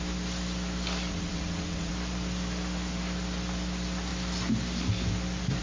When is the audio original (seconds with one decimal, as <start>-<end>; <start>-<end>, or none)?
0.0-1.1; 1.9-5.6